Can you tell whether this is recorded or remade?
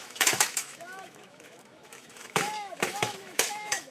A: remade